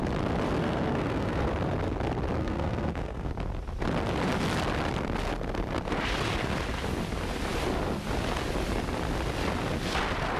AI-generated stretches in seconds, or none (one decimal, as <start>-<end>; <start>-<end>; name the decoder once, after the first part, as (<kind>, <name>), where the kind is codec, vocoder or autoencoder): 0.6-1.5 (codec, SNAC); 2.4-3.3